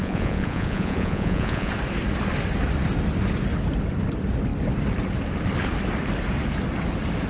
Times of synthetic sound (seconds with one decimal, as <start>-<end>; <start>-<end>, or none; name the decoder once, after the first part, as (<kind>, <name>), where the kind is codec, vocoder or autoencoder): 0.0-1.7 (vocoder, Vocos)